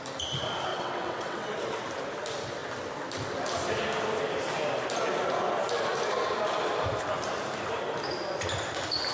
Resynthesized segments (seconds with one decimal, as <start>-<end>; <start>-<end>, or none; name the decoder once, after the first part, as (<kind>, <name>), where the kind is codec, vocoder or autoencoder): 0.7-1.5 (vocoder, WaveNeXt)